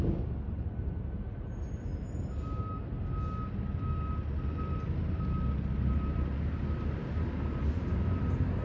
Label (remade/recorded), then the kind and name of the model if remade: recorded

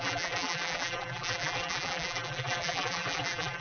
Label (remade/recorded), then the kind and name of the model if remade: remade, vocoder, BigVGAN v2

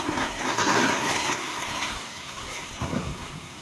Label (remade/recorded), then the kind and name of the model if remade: remade, codec, SNAC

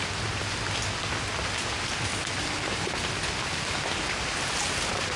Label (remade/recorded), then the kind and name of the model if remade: recorded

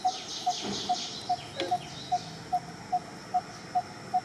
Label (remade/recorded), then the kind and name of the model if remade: recorded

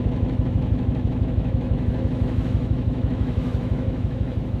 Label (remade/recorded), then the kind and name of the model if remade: remade, autoencoder, DAC-VAE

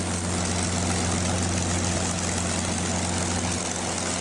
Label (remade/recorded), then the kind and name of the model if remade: recorded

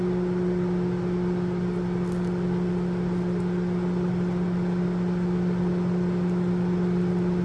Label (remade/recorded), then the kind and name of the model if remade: recorded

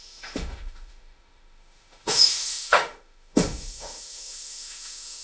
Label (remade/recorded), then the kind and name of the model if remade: remade, autoencoder, DAC-VAE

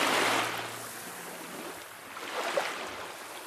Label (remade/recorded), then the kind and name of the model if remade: recorded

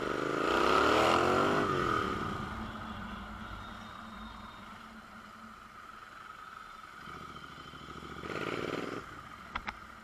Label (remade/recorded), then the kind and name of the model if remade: recorded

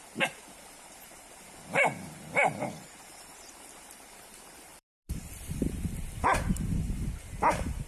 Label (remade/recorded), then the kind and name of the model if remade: remade, vocoder, BigVGAN v2